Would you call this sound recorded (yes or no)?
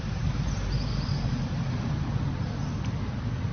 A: yes